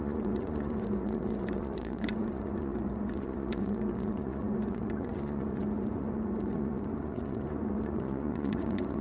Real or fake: fake